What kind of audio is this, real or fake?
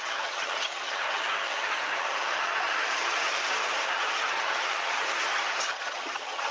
fake